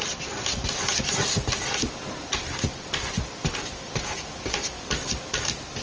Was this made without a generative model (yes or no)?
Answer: yes